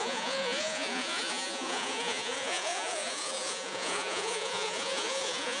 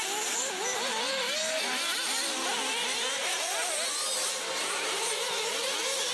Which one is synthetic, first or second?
first